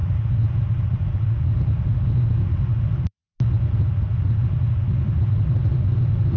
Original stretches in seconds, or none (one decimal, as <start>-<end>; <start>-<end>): 0.0-6.4